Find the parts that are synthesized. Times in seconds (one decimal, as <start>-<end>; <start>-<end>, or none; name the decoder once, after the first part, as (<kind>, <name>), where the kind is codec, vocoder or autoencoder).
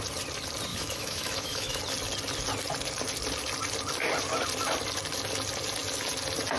0.7-1.8 (autoencoder, DAC-VAE)